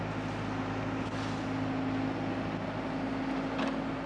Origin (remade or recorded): recorded